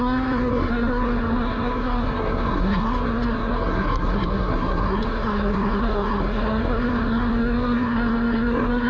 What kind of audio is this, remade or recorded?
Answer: remade